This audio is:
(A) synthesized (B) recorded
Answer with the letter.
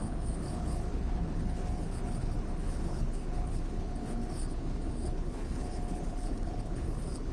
A